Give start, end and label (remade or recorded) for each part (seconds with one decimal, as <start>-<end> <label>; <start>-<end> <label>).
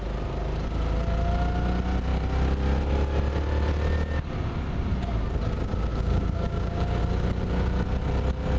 0.0-5.9 recorded; 5.9-7.0 remade; 7.0-8.6 recorded